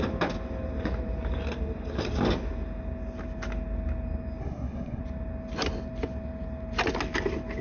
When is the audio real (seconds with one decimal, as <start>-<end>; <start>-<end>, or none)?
0.0-4.4; 5.0-7.6